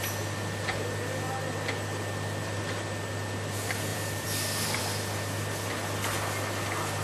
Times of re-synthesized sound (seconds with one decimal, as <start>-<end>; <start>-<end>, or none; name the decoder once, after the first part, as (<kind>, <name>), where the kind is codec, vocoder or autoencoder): 3.9-4.8 (vocoder, BigVGAN v2)